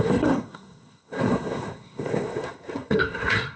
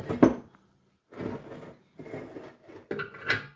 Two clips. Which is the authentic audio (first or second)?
second